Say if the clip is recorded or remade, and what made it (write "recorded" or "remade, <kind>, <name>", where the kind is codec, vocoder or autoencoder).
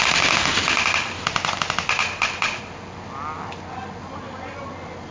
recorded